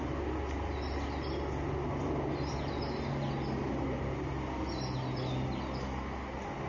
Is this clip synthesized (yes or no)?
no